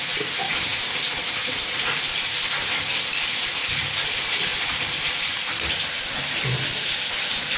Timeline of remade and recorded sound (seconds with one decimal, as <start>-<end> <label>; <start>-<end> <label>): 0.0-7.6 remade